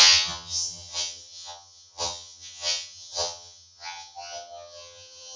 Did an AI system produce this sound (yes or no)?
yes